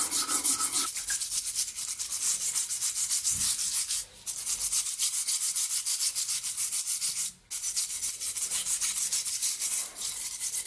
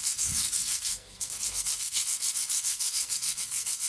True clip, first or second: first